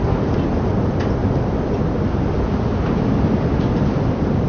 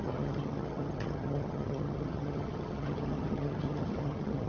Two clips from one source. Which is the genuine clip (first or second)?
first